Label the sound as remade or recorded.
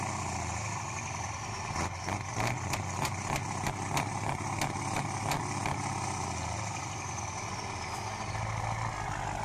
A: recorded